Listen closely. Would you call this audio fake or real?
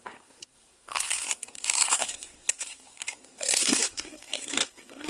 fake